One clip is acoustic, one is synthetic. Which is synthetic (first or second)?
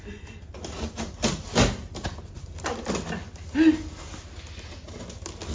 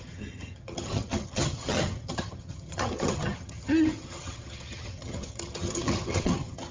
second